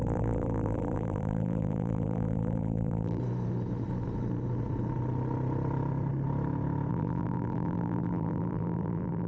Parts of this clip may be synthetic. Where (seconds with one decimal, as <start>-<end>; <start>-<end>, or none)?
0.0-3.2; 6.9-9.3